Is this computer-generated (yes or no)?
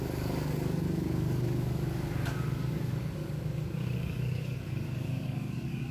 yes